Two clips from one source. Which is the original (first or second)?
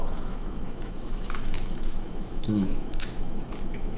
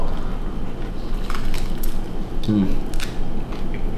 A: second